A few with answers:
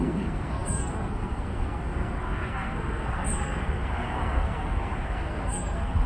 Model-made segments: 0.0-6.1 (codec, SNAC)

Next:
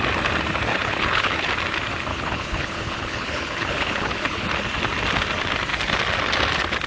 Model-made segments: 0.7-1.5 (codec, HILCodec); 2.1-4.5

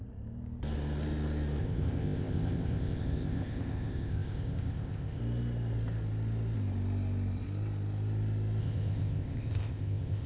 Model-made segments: 1.6-5.2 (codec, ZipCodec); 8.6-10.3

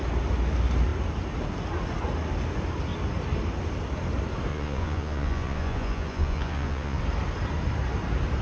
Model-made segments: 4.5-7.0 (vocoder, Vocos)

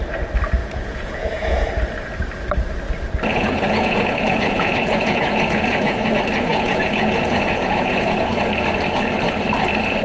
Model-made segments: 0.6-1.7 (vocoder, Vocos); 3.3-6.1; 6.5-8.4

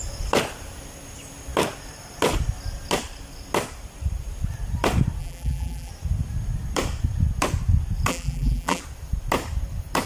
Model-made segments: 5.2-5.9 (vocoder, BigVGAN v2); 8.1-8.8

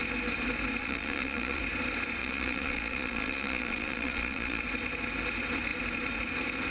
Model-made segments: 0.8-1.6 (vocoder, Vocos); 2.2-4.6